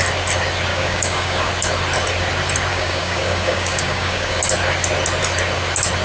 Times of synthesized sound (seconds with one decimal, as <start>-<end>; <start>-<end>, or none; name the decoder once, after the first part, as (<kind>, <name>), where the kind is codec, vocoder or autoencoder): 0.7-1.5 (codec, DAC); 2.7-4.4